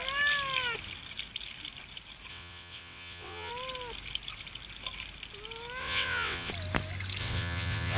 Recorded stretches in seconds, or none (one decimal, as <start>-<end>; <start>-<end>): 0.0-2.3; 3.5-5.8; 6.5-7.2